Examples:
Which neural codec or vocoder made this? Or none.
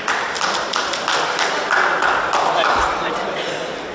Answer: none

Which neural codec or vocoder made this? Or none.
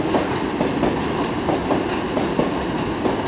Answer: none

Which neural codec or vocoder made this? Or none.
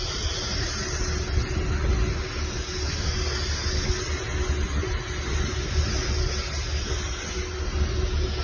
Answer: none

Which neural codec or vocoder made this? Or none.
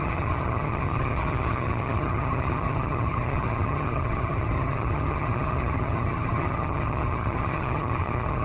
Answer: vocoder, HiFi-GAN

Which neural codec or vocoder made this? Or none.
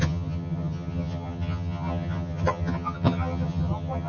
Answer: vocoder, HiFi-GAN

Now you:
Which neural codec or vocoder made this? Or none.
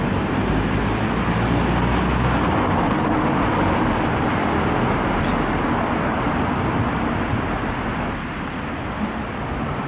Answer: none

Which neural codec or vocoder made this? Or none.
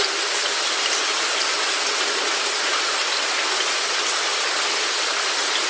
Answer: none